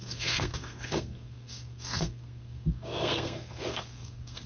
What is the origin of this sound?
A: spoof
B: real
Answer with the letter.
A